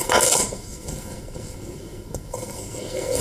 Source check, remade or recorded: remade